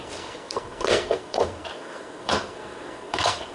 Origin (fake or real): fake